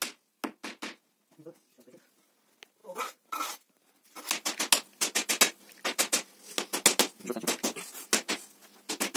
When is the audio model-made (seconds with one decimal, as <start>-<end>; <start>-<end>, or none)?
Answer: 2.8-4.2